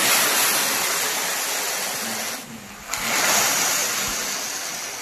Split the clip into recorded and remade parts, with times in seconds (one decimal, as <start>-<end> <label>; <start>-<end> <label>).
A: 0.0-5.0 recorded